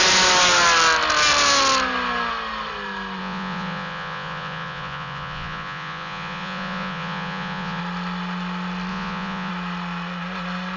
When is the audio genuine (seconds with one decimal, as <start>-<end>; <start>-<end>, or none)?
0.0-3.2; 7.8-8.9; 9.5-10.8